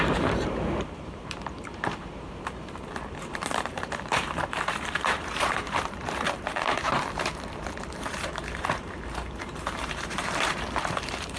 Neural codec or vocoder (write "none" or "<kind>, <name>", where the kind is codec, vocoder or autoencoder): vocoder, BigVGAN v2